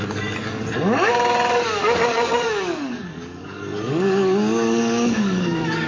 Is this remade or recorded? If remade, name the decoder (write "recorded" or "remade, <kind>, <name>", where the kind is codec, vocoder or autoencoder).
remade, codec, DAC